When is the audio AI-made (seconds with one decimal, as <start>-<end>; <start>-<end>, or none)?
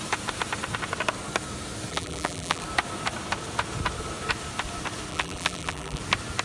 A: 1.9-2.6; 5.1-6.0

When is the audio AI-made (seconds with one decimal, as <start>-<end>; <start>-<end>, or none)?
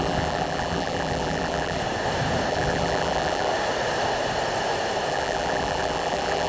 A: 0.0-1.8; 2.5-3.5; 5.1-6.5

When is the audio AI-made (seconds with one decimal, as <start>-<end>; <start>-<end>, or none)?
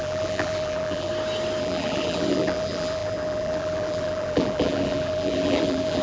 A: 0.0-1.1; 1.6-6.0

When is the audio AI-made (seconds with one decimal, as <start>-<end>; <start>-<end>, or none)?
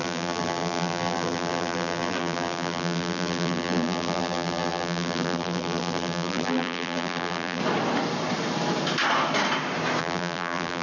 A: 0.0-7.6; 10.0-10.8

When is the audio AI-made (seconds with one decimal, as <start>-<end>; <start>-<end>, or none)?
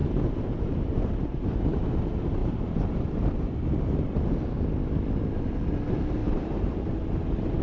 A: 0.0-1.8; 2.4-3.3; 6.2-6.9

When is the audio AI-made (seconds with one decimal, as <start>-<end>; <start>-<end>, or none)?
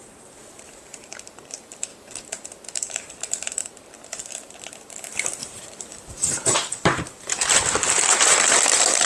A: 0.0-9.1